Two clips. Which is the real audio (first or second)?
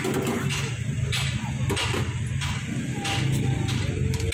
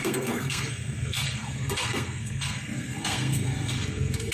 first